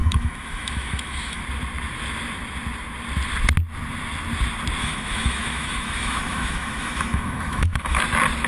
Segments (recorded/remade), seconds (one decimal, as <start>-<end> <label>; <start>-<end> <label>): 0.0-1.4 remade; 1.4-4.8 recorded; 4.8-8.0 remade; 8.0-8.5 recorded